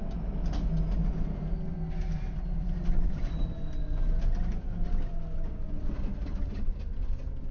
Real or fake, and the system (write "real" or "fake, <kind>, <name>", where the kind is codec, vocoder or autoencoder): real